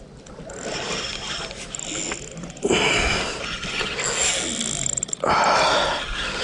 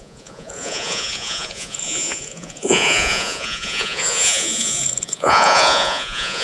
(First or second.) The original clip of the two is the first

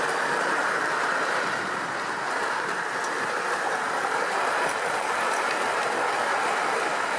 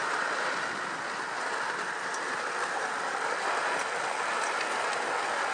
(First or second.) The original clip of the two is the second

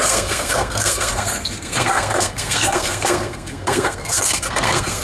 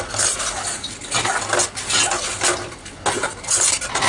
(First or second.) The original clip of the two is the second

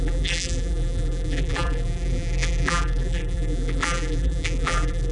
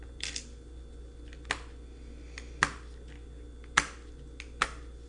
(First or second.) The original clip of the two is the second